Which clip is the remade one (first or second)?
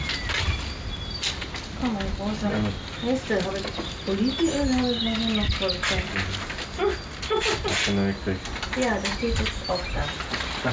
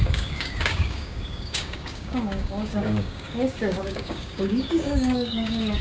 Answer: second